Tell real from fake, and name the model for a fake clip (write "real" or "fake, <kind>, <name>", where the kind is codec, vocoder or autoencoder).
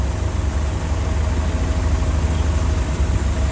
real